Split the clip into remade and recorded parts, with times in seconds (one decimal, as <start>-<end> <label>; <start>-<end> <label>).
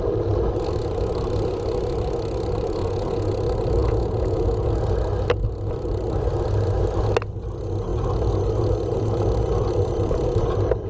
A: 0.0-2.8 recorded; 2.8-3.3 remade; 3.3-3.8 recorded; 3.8-4.7 remade; 4.7-10.9 recorded